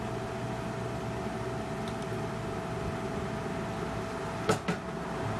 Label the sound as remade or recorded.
recorded